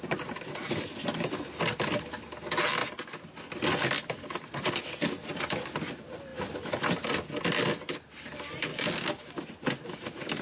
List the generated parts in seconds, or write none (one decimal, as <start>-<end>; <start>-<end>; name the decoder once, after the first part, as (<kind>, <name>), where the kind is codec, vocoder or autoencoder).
8.7-9.3 (codec, DAC)